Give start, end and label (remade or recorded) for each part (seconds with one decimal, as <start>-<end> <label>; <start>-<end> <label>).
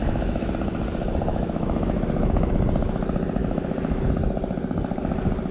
0.0-0.5 remade; 0.5-1.3 recorded; 1.3-2.5 remade; 2.5-3.4 recorded; 3.4-4.1 remade; 4.1-5.5 recorded